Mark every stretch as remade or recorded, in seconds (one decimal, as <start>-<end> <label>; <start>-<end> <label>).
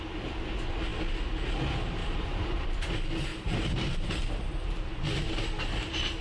0.0-2.0 recorded; 2.0-2.9 remade; 2.9-3.3 recorded; 3.3-5.3 remade; 5.3-6.2 recorded